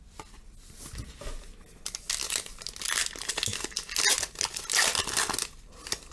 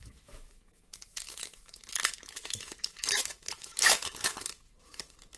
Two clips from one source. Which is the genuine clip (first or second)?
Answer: first